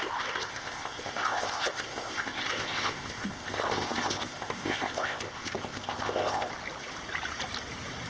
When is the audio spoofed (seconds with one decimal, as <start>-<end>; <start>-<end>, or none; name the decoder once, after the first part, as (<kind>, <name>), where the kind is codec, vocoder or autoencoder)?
0.0-6.5 (codec, ZipCodec)